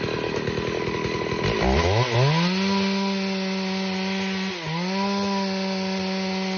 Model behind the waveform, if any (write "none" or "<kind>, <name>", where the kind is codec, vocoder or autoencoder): none